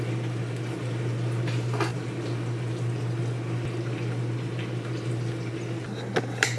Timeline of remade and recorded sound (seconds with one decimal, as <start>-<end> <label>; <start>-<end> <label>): 0.0-6.6 recorded